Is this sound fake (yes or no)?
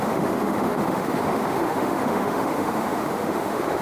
yes